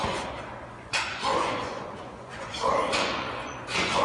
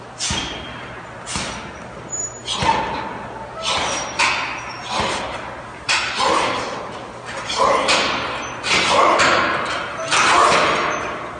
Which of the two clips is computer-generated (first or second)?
first